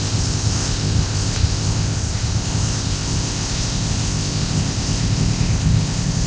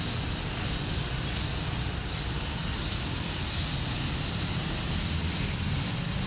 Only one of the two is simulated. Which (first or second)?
first